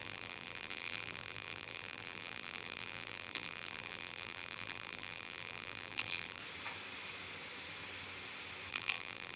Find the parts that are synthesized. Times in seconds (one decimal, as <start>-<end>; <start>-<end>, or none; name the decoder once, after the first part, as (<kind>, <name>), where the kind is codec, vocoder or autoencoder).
0.0-6.4 (vocoder, BigVGAN v2); 8.7-9.4